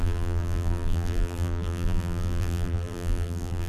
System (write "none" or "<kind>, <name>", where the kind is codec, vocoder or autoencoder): vocoder, BigVGAN v2